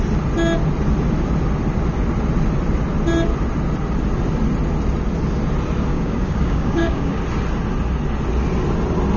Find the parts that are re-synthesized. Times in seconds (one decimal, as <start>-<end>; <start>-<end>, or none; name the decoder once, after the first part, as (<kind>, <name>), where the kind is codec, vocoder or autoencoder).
5.9-7.2 (codec, DAC)